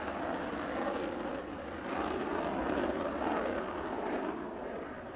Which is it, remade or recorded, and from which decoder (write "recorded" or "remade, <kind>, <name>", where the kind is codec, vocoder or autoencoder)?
recorded